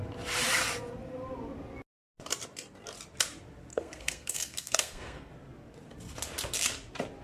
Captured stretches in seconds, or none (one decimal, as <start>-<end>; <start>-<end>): 0.0-3.7; 5.3-7.2